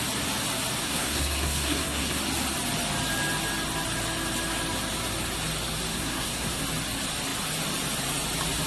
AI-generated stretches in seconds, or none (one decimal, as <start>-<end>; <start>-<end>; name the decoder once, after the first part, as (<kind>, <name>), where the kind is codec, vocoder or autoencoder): 0.8-2.2 (codec, SNAC); 5.9-6.6